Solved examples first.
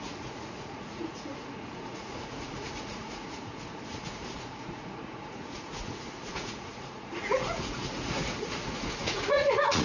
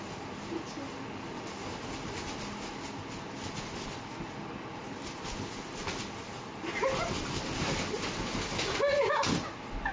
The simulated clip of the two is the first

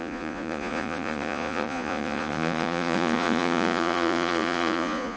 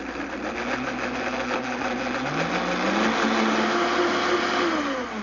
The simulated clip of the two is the first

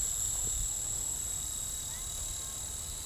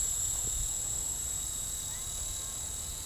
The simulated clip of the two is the second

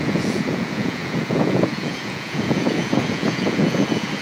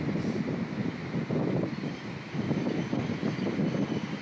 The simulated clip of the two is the first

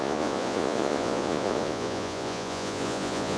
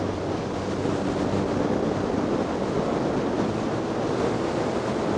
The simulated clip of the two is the first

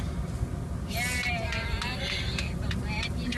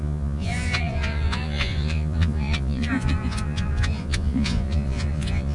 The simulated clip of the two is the second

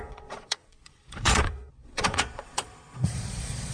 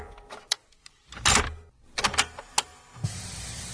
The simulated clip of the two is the first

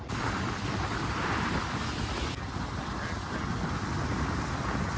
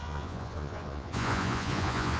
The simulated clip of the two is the second